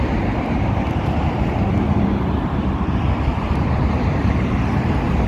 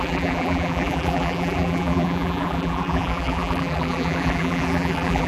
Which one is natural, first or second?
first